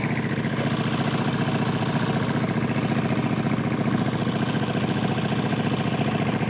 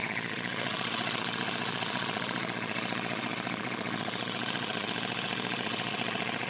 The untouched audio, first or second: first